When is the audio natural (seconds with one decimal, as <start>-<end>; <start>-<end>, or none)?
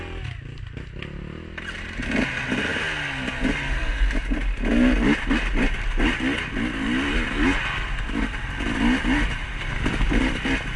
0.0-10.8